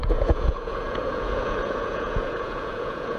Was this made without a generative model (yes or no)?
no